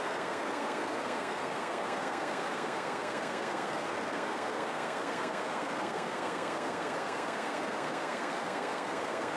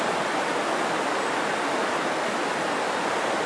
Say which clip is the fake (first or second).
first